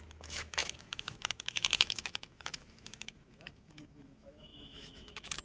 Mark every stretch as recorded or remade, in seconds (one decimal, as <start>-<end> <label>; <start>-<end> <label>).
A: 0.0-5.4 remade

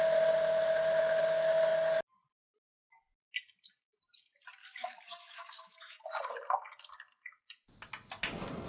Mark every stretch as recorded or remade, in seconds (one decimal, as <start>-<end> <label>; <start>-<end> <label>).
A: 0.0-4.6 recorded; 4.6-6.0 remade; 6.0-8.7 recorded

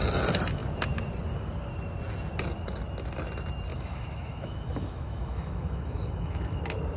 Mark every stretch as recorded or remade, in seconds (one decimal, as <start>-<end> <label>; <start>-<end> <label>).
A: 0.0-3.7 recorded; 3.7-6.6 remade; 6.6-7.0 recorded

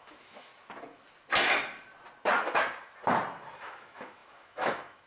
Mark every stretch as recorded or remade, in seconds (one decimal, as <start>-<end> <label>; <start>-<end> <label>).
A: 0.0-0.5 remade; 0.5-3.6 recorded; 3.6-5.1 remade